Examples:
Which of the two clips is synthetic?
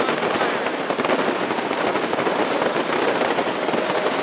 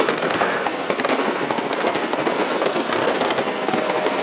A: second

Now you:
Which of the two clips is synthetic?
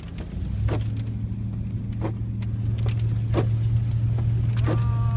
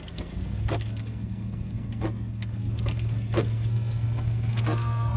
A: second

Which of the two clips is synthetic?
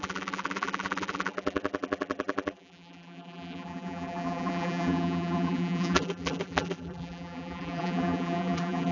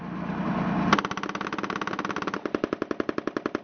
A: first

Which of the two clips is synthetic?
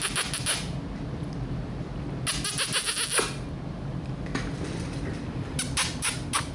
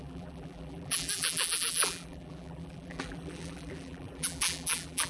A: second